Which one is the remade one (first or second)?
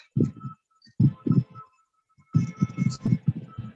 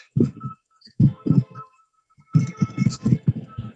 second